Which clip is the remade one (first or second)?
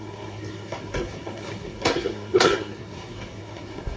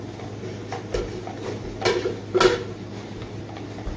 first